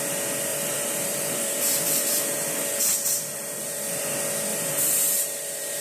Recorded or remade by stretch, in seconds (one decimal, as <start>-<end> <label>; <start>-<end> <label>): 0.0-0.5 recorded; 0.5-4.0 remade; 4.0-4.5 recorded; 4.5-5.8 remade